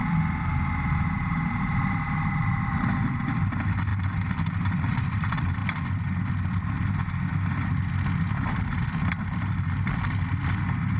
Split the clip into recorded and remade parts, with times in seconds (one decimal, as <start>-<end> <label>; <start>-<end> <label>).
0.0-3.9 remade; 3.9-4.7 recorded; 4.7-5.6 remade; 5.6-8.3 recorded; 8.3-11.0 remade